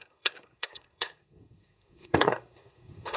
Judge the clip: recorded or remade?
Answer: remade